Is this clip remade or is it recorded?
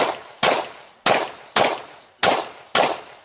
recorded